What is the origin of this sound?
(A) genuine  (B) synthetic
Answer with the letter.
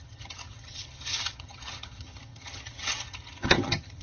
B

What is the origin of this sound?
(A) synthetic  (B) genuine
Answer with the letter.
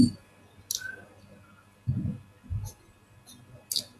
B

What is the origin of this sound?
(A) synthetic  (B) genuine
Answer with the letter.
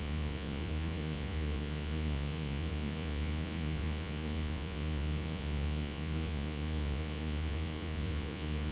A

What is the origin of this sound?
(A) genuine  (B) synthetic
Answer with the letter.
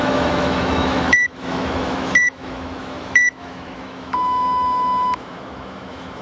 B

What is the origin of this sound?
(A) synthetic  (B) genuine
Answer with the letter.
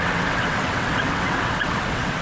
A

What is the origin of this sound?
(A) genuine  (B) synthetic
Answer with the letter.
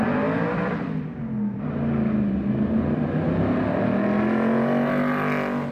A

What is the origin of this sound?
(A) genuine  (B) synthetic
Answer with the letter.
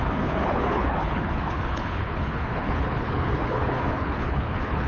B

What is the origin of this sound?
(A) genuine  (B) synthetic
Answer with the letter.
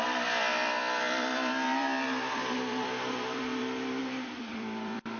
B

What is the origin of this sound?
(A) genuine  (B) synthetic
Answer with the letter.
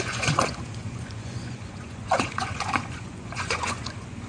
B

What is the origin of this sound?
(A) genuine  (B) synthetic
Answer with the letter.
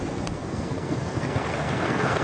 B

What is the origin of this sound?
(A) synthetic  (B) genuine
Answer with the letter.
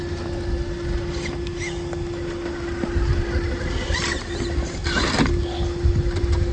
B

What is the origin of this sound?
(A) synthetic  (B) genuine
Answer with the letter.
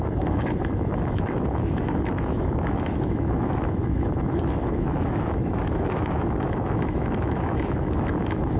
A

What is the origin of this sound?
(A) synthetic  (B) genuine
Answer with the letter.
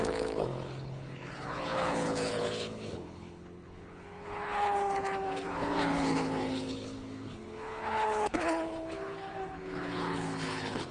A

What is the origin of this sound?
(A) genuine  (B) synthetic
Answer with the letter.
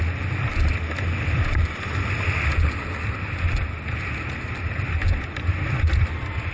A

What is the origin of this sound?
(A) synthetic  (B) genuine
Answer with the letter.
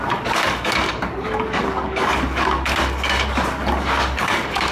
A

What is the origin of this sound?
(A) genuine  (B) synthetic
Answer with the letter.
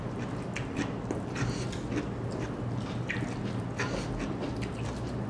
A